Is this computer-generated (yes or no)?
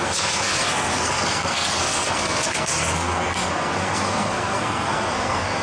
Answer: yes